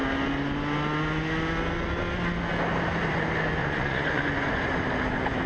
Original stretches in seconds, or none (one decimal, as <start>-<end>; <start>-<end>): 0.0-3.6; 4.7-5.5